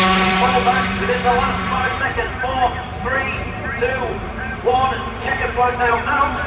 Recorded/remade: remade